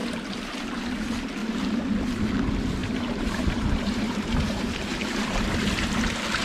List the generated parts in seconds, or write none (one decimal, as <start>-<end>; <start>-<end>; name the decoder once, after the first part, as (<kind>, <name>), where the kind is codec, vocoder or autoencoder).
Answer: 1.4-1.9 (vocoder, BigVGAN v2); 2.8-6.0